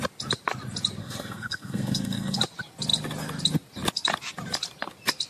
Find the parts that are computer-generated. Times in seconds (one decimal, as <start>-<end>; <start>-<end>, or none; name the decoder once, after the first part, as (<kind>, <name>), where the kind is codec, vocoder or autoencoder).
1.0-2.4 (codec, SNAC)